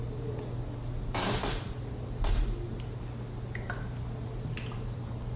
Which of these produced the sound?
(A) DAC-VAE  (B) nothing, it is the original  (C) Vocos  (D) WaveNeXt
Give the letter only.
B